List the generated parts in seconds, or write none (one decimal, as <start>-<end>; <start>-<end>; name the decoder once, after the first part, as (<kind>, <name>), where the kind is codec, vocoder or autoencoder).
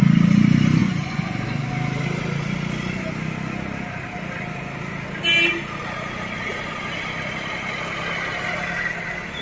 0.8-1.7 (vocoder, Vocos)